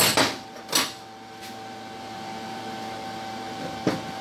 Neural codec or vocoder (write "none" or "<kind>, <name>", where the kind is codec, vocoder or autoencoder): none